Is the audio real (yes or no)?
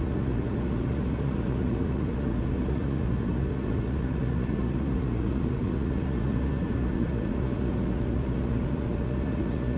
no